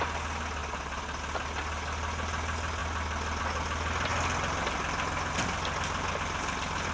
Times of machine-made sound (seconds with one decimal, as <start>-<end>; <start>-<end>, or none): none